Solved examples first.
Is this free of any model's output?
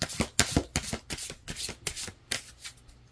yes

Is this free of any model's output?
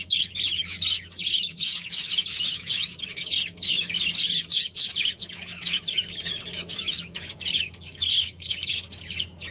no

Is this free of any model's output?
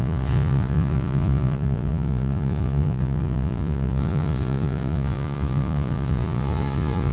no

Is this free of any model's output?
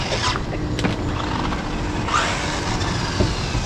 yes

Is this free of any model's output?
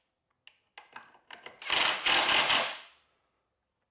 yes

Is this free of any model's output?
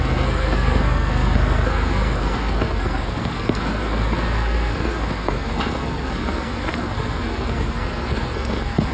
no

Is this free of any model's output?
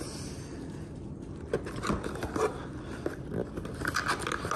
yes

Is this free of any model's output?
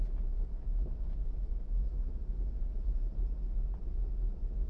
yes